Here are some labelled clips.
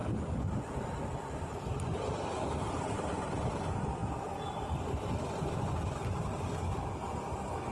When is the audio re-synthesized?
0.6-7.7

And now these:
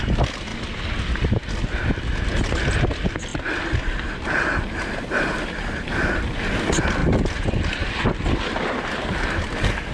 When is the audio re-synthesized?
0.5-2.1; 3.3-5.8

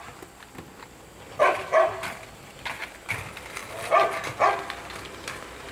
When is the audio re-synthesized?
none